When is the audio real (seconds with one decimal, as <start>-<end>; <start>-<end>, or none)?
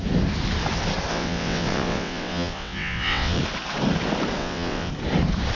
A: 0.0-1.1; 3.4-4.4; 4.9-5.5